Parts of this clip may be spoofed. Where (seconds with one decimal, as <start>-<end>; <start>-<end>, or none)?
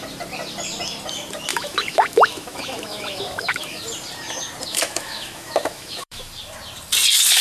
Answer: 1.5-3.8; 4.7-6.3